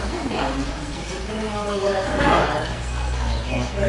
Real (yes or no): no